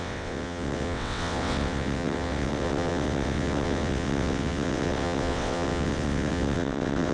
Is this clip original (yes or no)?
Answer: no